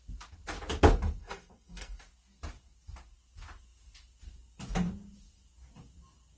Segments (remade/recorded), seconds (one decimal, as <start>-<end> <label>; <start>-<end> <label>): 0.0-1.2 recorded; 1.2-2.0 remade; 2.0-6.4 recorded